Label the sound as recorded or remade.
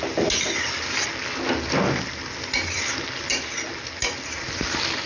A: recorded